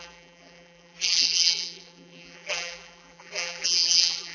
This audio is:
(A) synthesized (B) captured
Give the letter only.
A